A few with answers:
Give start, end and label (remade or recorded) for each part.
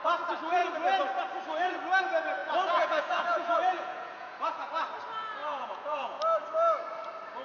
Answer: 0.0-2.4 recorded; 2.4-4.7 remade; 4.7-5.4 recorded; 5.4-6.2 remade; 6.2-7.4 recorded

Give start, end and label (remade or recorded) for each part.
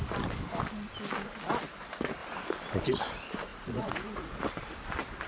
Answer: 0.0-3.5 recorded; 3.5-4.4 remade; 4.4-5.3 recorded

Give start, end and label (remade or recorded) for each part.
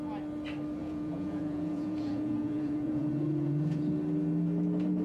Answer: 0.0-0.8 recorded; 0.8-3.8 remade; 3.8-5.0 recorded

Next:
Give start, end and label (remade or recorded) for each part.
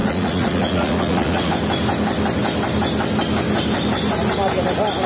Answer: 0.0-1.5 remade; 1.5-5.1 recorded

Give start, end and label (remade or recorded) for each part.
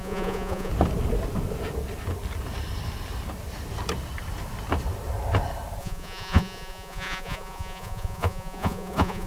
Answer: 0.0-0.7 remade; 0.7-5.8 recorded; 5.8-9.3 remade